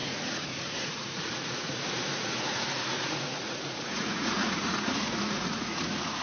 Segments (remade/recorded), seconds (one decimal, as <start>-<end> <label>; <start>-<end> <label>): 0.0-6.2 remade